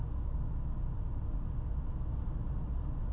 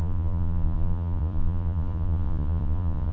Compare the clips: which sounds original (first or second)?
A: first